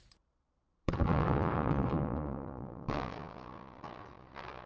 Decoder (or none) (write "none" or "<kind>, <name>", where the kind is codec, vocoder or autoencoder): vocoder, Vocos